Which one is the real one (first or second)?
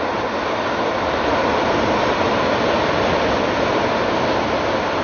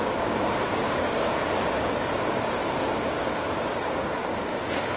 first